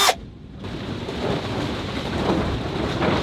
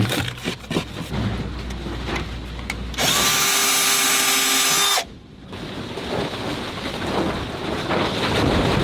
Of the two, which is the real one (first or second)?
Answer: second